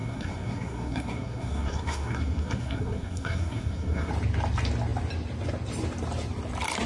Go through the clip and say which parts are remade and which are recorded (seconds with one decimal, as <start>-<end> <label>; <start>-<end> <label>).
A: 0.0-4.1 remade; 4.1-6.9 recorded